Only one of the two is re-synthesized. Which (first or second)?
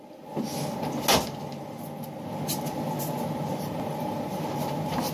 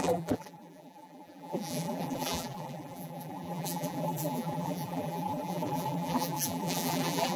second